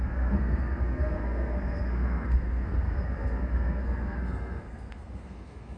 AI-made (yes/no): yes